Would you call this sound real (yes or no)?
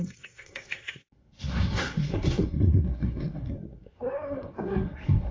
no